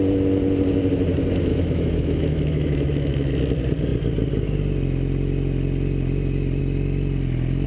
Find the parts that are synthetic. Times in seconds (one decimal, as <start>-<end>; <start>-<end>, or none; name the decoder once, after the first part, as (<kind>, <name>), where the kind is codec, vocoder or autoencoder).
1.5-3.3 (autoencoder, DAC-VAE)